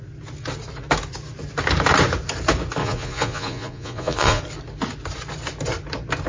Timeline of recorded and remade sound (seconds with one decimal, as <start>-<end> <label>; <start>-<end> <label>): 0.0-2.8 recorded; 2.8-4.4 remade; 4.4-6.3 recorded